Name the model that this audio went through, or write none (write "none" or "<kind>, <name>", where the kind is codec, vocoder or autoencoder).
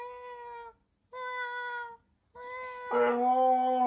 none